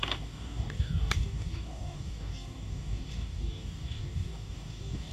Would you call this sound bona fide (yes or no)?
no